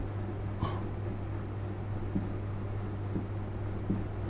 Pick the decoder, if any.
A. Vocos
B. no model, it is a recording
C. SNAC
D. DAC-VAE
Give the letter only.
B